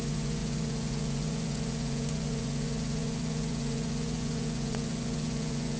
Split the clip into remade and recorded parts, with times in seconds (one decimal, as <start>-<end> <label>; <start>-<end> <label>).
0.0-5.8 remade